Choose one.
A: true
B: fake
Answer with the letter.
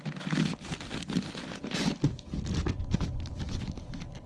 A